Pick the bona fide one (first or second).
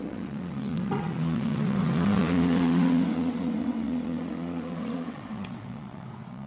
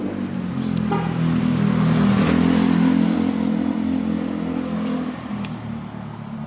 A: second